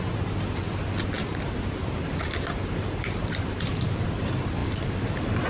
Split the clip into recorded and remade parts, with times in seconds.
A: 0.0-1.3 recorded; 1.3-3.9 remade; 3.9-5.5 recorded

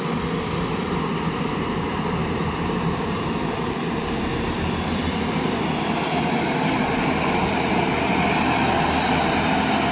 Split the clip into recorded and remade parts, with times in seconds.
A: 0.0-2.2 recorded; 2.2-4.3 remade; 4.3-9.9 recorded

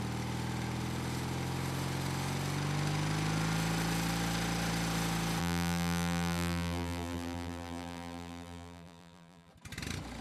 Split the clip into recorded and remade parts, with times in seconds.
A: 0.0-5.4 recorded; 5.4-9.5 remade; 9.5-10.2 recorded

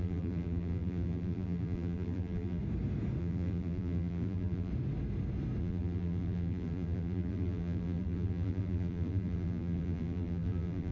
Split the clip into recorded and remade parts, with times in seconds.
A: 0.0-2.6 remade; 2.6-3.2 recorded; 3.2-4.7 remade; 4.7-5.6 recorded; 5.6-10.9 remade